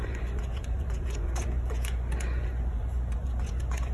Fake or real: fake